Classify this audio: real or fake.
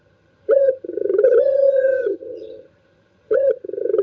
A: fake